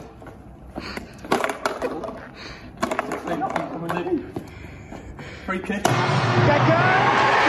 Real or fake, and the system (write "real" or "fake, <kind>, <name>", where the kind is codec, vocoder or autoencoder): real